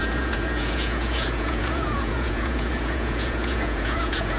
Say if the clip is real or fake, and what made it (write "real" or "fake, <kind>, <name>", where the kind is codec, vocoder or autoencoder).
fake, vocoder, Vocos